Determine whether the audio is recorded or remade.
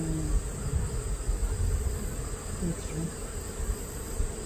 recorded